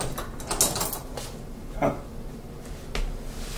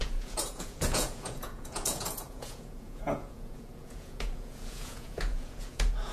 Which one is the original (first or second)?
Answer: first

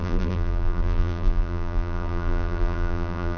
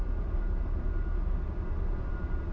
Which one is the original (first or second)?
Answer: second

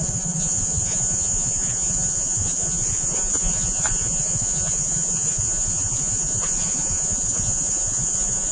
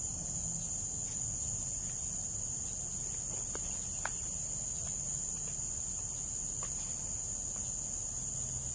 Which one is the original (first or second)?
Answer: second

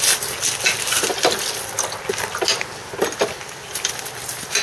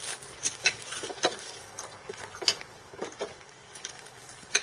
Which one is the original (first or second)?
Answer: first